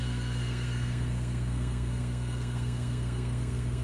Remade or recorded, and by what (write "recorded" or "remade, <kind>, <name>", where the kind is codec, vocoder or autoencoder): remade, codec, SNAC